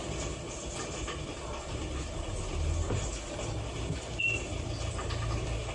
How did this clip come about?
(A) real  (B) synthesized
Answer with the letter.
A